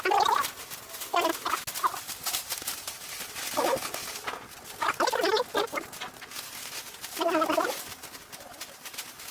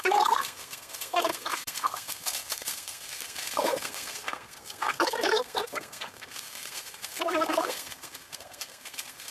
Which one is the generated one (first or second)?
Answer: second